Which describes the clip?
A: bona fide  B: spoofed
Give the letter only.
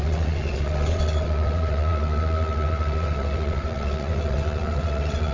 B